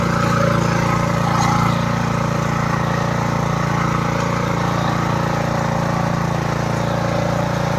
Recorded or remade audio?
recorded